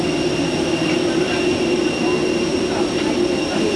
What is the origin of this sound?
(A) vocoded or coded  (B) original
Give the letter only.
B